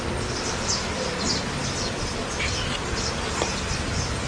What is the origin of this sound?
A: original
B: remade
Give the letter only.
A